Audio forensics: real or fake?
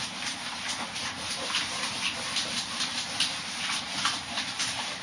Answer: fake